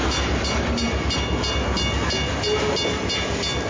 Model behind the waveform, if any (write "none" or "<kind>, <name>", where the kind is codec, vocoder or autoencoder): none